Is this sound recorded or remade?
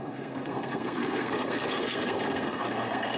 remade